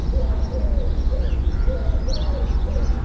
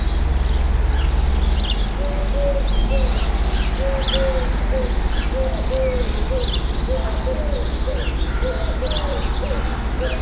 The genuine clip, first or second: second